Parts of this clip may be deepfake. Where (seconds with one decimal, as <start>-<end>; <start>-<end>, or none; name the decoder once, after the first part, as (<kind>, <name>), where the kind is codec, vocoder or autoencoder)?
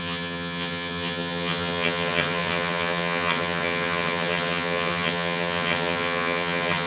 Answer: 0.0-6.9 (vocoder, HiFi-GAN)